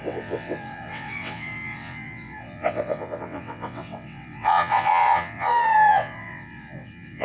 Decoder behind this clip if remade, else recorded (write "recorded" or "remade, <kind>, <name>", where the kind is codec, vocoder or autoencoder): remade, vocoder, WaveNeXt